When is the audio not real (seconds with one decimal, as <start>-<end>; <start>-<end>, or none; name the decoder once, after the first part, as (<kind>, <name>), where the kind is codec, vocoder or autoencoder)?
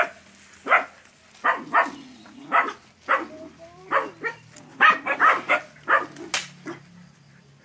4.7-5.5 (vocoder, BigVGAN v2)